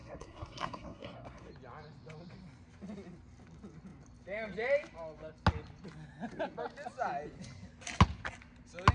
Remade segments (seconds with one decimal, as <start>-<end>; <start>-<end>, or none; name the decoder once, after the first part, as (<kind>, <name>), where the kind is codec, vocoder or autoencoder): 0.0-1.5 (codec, SNAC)